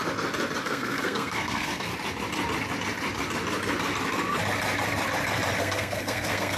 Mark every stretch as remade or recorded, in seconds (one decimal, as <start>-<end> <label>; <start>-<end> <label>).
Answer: 0.0-0.6 recorded; 0.6-1.9 remade; 1.9-5.6 recorded; 5.6-6.6 remade